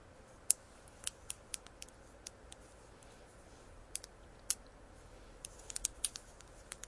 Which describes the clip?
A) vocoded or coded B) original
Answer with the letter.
B